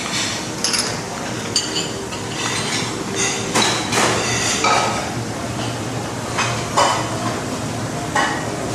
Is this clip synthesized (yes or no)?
no